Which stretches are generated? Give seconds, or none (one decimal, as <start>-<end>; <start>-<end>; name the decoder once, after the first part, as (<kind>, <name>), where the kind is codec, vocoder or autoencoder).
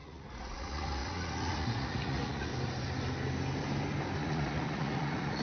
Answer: 0.0-2.5 (vocoder, Vocos); 4.2-5.4